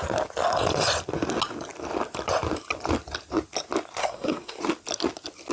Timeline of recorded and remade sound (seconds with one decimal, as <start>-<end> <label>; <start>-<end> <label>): 0.0-4.0 recorded; 4.0-4.6 remade; 4.6-5.5 recorded